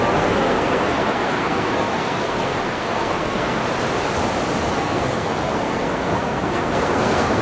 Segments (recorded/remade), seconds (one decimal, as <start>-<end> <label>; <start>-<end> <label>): 0.0-3.6 remade; 3.6-4.7 recorded; 4.7-7.4 remade